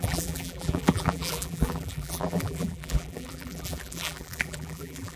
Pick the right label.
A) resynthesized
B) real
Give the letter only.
A